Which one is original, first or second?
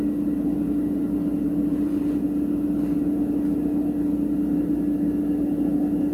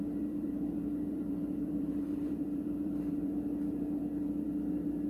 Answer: first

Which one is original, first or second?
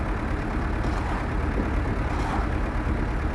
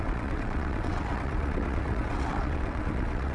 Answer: first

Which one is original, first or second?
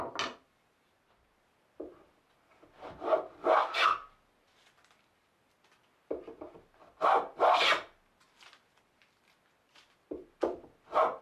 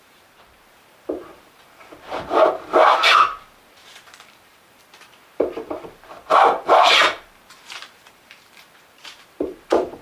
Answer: first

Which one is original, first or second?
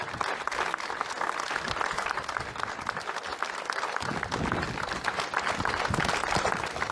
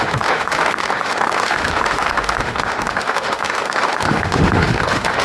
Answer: first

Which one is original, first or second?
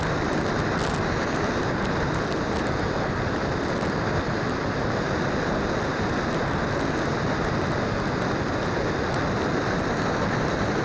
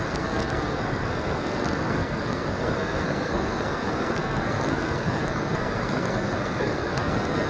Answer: first